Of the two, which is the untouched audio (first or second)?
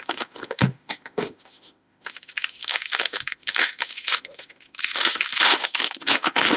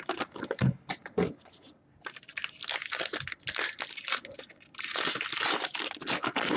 second